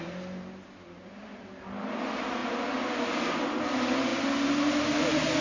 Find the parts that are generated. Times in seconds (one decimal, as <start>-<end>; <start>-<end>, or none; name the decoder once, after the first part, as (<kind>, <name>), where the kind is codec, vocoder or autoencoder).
none